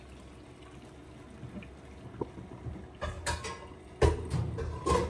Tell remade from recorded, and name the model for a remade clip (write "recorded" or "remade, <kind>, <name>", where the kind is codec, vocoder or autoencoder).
recorded